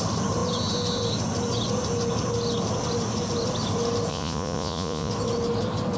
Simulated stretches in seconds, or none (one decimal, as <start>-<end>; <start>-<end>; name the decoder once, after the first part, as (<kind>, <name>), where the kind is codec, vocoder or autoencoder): 4.1-5.1 (vocoder, Vocos)